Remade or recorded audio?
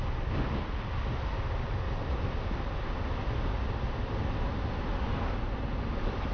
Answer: recorded